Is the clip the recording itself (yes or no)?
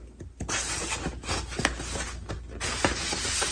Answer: yes